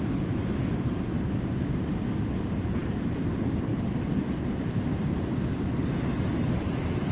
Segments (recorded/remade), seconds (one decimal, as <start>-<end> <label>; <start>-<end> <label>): 0.0-7.1 recorded